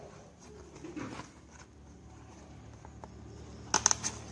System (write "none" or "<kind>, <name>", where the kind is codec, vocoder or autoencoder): none